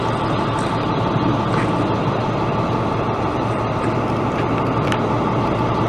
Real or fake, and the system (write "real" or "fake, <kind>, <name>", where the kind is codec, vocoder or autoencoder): real